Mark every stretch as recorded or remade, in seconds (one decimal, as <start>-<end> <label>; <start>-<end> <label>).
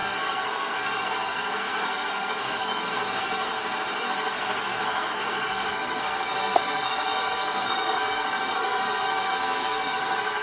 0.0-3.5 remade; 3.5-4.0 recorded; 4.0-10.4 remade